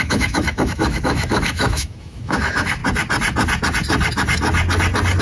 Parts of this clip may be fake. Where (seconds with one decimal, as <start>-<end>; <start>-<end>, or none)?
0.0-2.8